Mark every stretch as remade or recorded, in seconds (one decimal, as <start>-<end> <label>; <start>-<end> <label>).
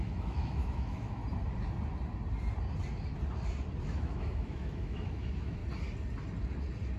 0.0-1.2 remade; 1.2-3.8 recorded; 3.8-5.6 remade; 5.6-7.0 recorded